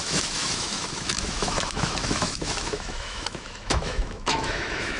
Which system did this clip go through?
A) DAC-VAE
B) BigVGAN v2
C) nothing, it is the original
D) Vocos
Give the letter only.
A